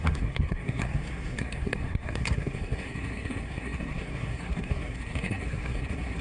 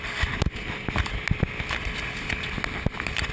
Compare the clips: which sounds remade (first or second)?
first